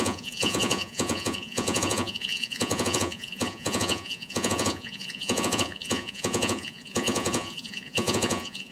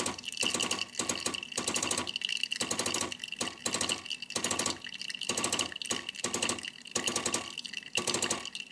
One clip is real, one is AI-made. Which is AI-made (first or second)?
first